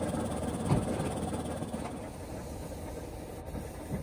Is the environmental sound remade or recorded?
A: recorded